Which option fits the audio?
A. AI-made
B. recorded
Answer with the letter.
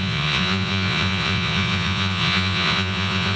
A